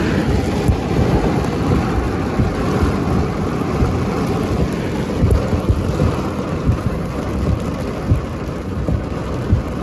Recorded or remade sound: recorded